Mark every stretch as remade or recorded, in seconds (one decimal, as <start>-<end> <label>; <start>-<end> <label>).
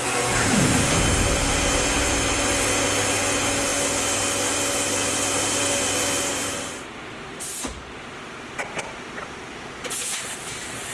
0.0-10.9 recorded